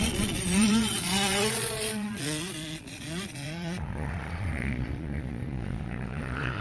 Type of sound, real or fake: fake